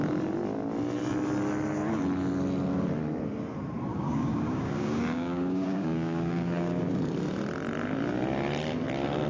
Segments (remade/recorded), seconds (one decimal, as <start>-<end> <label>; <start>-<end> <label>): 0.0-3.9 recorded; 3.9-6.8 remade; 6.8-9.3 recorded